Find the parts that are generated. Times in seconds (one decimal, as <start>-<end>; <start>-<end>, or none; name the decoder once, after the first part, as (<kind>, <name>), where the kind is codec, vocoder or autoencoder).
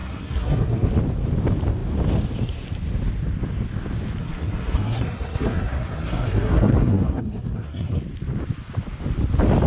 0.0-0.9 (codec, SNAC); 4.2-8.0